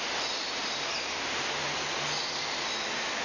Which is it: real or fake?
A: real